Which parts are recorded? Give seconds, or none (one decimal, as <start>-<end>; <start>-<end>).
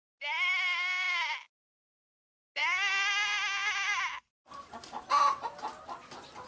0.0-6.5